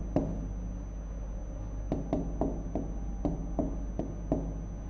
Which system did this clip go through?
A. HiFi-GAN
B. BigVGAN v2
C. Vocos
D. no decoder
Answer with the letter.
D